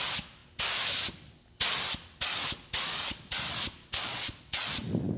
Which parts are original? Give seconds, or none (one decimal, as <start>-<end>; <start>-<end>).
0.0-3.8; 4.7-5.2